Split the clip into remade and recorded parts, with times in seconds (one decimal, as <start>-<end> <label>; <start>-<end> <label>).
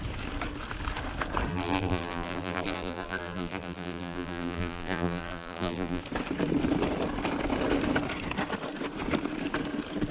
0.0-1.5 recorded; 1.5-6.0 remade; 6.0-10.1 recorded